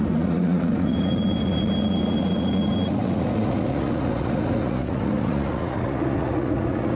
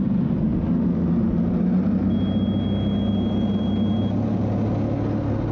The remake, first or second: first